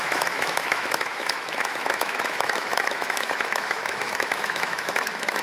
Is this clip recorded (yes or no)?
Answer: no